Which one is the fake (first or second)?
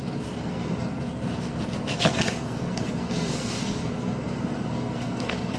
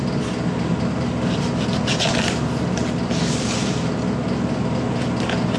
first